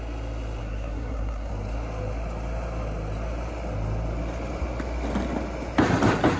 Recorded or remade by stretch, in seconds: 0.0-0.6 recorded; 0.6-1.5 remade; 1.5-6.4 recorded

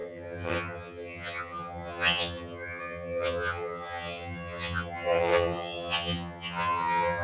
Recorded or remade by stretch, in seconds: 0.0-7.2 remade